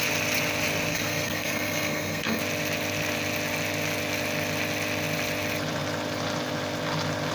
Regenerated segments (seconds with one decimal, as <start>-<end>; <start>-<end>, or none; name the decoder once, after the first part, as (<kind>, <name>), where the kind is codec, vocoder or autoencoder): 0.9-2.4 (codec, SNAC)